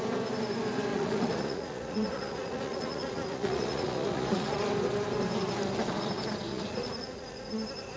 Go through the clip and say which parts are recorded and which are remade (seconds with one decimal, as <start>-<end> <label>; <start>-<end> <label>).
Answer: 0.0-0.9 recorded; 0.9-4.6 remade; 4.6-6.5 recorded; 6.5-7.5 remade; 7.5-8.0 recorded

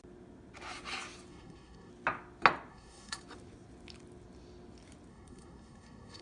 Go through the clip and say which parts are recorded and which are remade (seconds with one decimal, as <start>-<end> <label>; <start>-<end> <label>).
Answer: 0.0-1.3 recorded; 1.3-1.9 remade; 1.9-2.7 recorded; 2.7-3.2 remade; 3.2-5.1 recorded; 5.1-6.2 remade

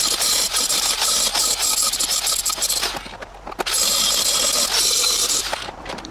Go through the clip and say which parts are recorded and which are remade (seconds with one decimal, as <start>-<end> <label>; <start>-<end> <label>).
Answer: 0.0-1.3 remade; 1.3-5.0 recorded; 5.0-6.1 remade

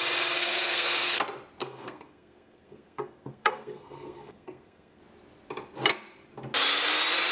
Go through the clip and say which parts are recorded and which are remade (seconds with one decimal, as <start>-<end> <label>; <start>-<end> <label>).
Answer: 0.0-0.4 recorded; 0.4-1.2 remade; 1.2-1.6 recorded; 1.6-5.0 remade; 5.0-7.3 recorded